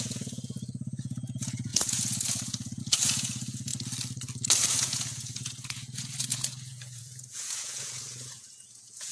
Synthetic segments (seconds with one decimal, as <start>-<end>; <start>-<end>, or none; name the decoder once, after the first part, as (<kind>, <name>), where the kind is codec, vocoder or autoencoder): 0.0-3.7 (vocoder, Vocos); 4.7-9.1